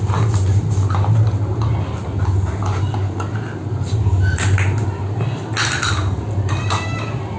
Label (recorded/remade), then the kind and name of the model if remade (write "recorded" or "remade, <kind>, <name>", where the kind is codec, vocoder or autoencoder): recorded